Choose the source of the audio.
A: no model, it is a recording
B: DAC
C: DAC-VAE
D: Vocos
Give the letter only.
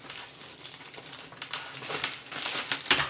A